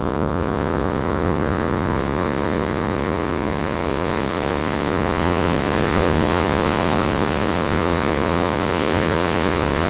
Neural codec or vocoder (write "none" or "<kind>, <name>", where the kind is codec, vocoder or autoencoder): vocoder, Vocos